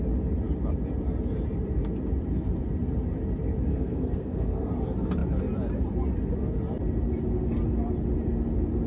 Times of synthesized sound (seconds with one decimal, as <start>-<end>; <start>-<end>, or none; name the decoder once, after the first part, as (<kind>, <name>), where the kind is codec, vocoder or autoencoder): 3.7-4.7 (codec, SNAC)